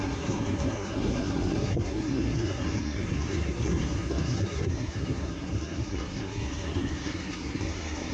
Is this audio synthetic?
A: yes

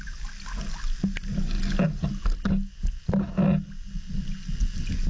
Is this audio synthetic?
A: no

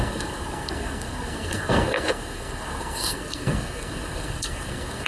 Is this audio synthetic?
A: yes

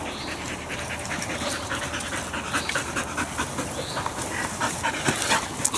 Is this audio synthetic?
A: no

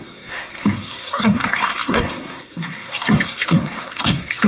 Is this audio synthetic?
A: yes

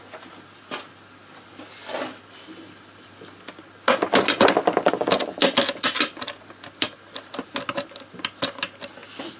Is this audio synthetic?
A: no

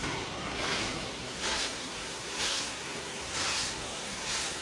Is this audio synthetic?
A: yes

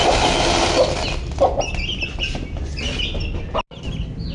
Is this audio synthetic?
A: no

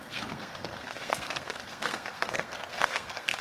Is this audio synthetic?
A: yes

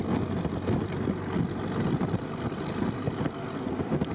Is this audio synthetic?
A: no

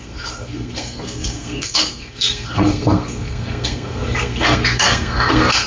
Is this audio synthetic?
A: yes